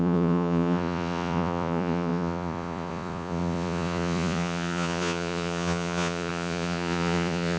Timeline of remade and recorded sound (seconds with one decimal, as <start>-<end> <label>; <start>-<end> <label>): 0.0-7.6 remade